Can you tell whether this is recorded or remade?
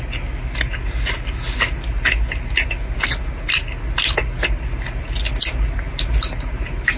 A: recorded